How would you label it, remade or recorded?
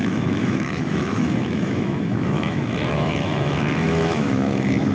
remade